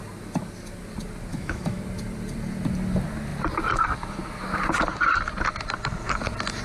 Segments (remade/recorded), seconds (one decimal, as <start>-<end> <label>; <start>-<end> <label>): 0.0-1.3 recorded; 1.3-1.8 remade; 1.8-6.6 recorded